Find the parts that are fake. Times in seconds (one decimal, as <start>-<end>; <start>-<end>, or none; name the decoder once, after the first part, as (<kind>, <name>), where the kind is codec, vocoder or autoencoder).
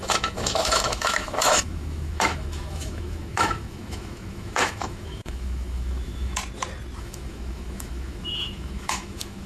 0.0-6.4 (autoencoder, DAC-VAE); 7.0-9.5